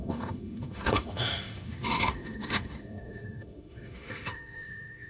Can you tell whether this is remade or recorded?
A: remade